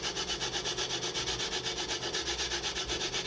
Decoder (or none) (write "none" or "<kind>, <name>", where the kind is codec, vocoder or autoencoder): none